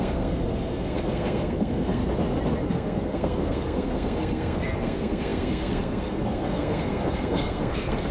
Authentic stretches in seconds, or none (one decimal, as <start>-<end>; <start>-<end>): 2.0-2.7